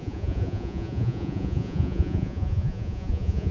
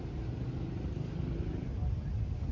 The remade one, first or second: first